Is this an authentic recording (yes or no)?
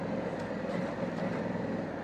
yes